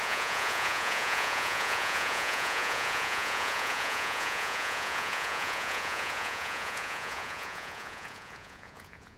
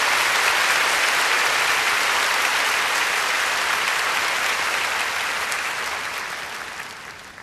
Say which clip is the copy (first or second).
first